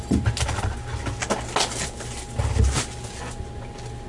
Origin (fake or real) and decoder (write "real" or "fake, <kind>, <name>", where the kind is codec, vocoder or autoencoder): real